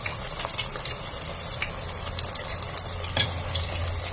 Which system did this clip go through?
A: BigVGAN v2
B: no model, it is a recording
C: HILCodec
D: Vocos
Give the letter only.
B